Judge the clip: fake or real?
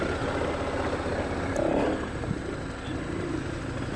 real